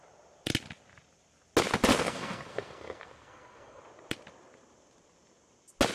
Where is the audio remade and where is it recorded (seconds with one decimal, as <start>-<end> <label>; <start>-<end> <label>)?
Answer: 0.0-1.9 recorded; 1.9-3.8 remade; 3.8-5.9 recorded